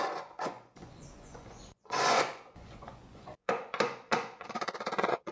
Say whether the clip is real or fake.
fake